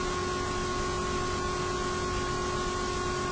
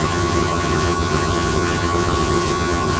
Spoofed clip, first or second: second